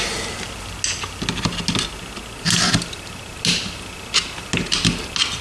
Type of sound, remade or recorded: recorded